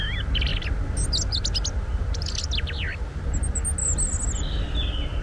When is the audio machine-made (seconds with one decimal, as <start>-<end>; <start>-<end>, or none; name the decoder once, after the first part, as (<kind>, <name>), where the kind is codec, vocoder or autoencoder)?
none